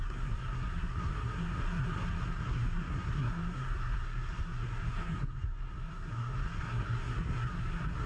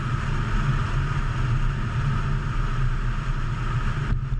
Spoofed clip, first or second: first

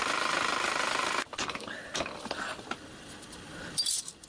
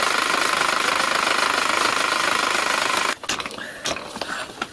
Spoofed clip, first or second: first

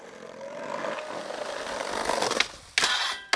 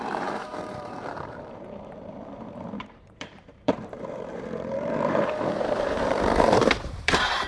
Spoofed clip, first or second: second